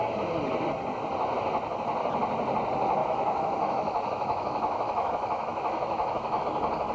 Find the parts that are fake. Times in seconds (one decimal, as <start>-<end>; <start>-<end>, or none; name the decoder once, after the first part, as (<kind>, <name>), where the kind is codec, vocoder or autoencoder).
3.0-6.4 (autoencoder, DAC-VAE)